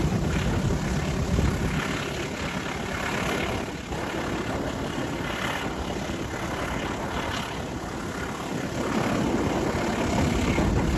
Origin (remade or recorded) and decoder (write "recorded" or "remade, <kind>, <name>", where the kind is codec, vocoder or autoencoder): recorded